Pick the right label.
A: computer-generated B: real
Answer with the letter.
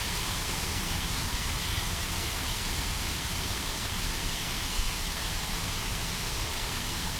A